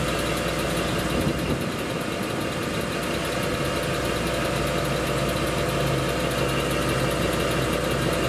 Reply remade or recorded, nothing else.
recorded